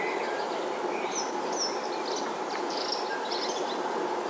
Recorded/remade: recorded